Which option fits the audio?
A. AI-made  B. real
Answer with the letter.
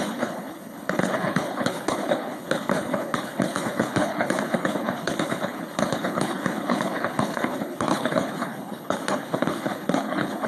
A